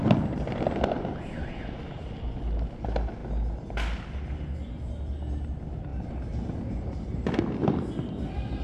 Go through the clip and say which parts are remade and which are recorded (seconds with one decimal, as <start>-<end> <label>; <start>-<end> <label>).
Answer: 0.0-8.6 recorded